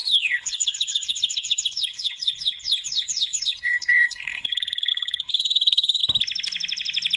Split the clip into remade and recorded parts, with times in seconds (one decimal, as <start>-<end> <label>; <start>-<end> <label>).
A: 0.0-6.0 remade; 6.0-7.2 recorded